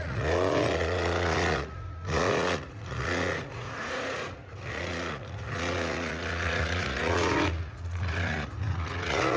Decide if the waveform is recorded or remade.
remade